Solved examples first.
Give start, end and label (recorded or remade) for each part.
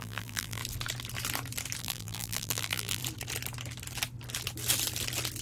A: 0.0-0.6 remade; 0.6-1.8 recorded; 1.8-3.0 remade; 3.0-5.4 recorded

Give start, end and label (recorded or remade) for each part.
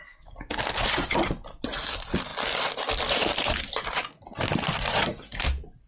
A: 0.0-5.9 recorded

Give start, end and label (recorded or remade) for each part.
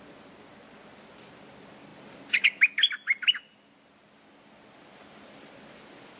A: 0.0-6.2 recorded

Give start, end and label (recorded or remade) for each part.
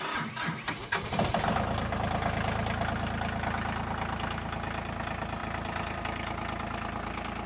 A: 0.0-5.4 recorded; 5.4-6.0 remade; 6.0-7.5 recorded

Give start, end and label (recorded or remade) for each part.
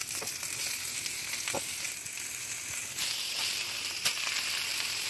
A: 0.0-5.1 recorded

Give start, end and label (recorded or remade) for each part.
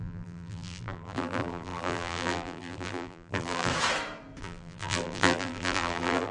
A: 0.0-3.7 remade; 3.7-4.4 recorded; 4.4-6.3 remade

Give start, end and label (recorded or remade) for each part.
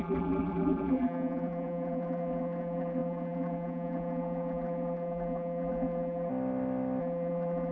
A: 0.0-6.3 remade; 6.3-7.0 recorded; 7.0-7.7 remade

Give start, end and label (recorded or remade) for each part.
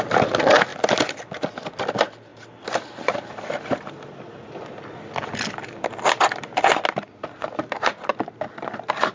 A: 0.0-2.3 recorded; 2.3-6.4 remade; 6.4-9.1 recorded